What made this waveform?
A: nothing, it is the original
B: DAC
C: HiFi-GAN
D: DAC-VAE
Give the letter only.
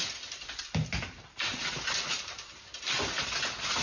A